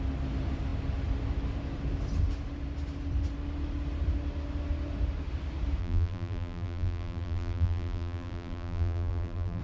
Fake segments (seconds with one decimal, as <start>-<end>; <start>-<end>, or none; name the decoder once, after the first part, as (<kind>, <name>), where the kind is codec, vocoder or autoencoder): 5.8-9.6 (vocoder, BigVGAN v2)